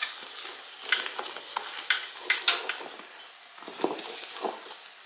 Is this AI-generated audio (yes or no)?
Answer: no